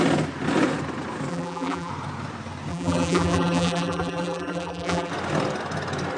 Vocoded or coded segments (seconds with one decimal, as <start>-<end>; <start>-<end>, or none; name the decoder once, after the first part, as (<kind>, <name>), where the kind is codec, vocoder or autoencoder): 1.3-1.9 (vocoder, BigVGAN v2); 2.7-5.1